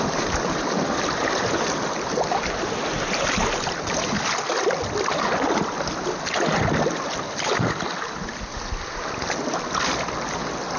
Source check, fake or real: real